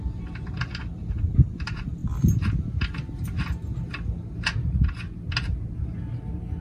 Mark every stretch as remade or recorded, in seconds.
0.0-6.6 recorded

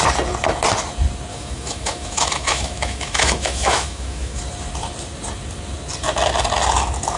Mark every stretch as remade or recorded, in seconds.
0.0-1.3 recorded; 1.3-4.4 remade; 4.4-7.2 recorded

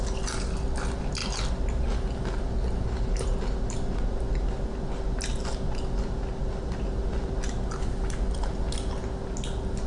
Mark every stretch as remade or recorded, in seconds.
0.0-9.9 recorded

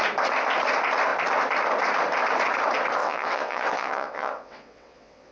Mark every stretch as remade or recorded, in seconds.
0.0-3.0 recorded; 3.0-5.3 remade

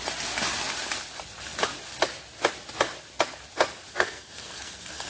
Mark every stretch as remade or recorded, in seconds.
0.0-3.9 recorded; 3.9-5.1 remade